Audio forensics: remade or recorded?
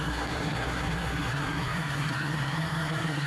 remade